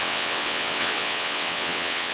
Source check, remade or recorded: remade